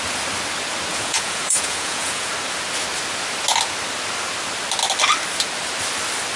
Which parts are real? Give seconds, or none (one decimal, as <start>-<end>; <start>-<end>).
0.0-0.9; 2.3-6.4